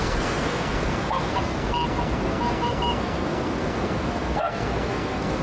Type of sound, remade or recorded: remade